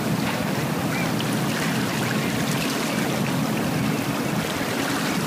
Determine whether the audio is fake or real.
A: real